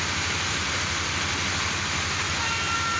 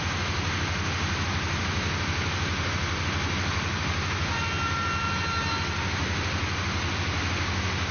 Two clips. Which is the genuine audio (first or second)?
second